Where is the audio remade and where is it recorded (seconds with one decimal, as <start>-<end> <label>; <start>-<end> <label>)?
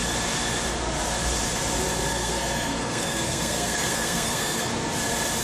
0.0-2.1 recorded; 2.1-4.7 remade; 4.7-5.4 recorded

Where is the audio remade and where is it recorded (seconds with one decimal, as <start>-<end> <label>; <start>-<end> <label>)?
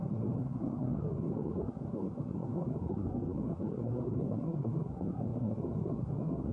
0.0-6.5 remade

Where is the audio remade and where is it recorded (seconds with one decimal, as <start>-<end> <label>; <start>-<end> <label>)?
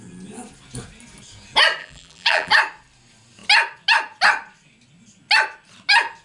0.0-1.8 recorded; 1.8-2.5 remade; 2.5-6.2 recorded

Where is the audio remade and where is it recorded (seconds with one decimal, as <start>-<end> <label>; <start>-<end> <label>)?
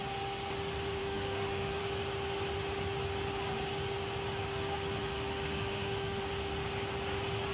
0.0-1.0 recorded; 1.0-1.8 remade; 1.8-4.4 recorded; 4.4-6.2 remade; 6.2-7.5 recorded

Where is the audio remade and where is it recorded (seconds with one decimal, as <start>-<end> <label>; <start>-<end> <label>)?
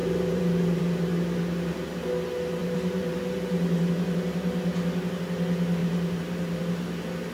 0.0-0.8 remade; 0.8-2.6 recorded; 2.6-3.9 remade; 3.9-5.8 recorded; 5.8-6.6 remade; 6.6-7.3 recorded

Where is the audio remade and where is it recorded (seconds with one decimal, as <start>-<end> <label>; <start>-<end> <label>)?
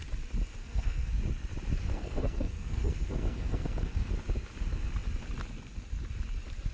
0.0-0.6 recorded; 0.6-1.2 remade; 1.2-1.8 recorded; 1.8-4.1 remade; 4.1-6.7 recorded